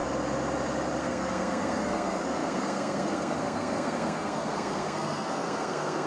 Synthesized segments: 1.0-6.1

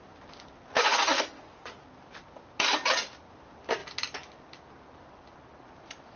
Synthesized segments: none